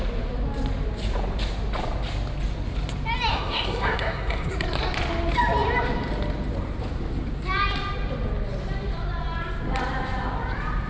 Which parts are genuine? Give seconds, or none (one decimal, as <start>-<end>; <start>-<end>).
0.0-3.3; 4.5-10.9

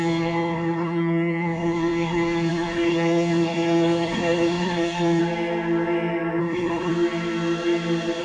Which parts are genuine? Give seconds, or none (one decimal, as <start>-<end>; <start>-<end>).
5.2-6.4; 6.9-8.2

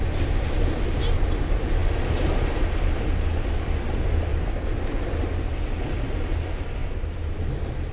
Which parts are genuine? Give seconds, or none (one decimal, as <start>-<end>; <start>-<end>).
0.0-7.9

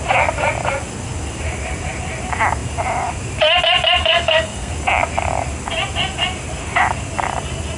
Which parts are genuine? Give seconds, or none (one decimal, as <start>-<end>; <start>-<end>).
0.0-4.0; 4.7-7.8

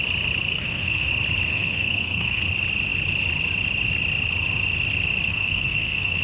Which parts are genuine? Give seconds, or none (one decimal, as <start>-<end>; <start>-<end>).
0.0-0.5; 1.1-1.5; 2.4-5.3

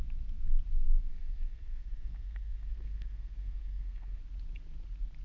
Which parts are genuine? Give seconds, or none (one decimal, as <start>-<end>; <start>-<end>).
0.0-1.1; 4.2-5.2